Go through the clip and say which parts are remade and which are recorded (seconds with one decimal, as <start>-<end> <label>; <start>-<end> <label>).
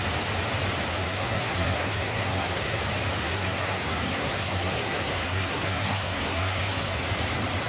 0.0-0.9 recorded; 0.9-2.8 remade; 2.8-3.2 recorded; 3.2-7.0 remade; 7.0-7.7 recorded